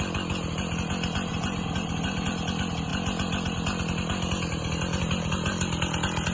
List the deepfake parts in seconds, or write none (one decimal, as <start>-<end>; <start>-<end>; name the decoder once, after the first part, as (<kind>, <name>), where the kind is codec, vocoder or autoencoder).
1.3-2.3 (vocoder, BigVGAN v2)